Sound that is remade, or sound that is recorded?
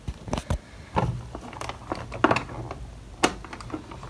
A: recorded